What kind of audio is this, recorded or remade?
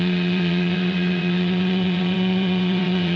remade